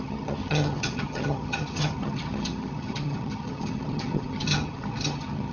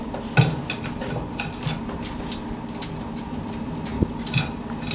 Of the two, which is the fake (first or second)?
first